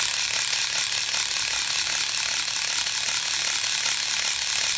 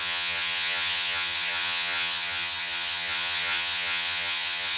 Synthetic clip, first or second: second